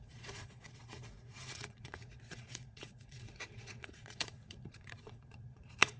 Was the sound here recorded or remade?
remade